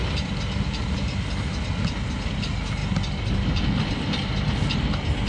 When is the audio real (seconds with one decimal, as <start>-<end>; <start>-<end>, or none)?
0.0-5.3